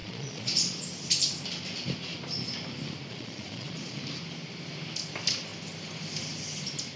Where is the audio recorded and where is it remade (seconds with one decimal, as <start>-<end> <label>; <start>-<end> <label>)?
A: 0.0-0.8 remade; 0.8-3.1 recorded; 3.1-4.0 remade; 4.0-7.0 recorded